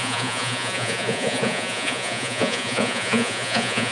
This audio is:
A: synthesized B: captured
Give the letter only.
A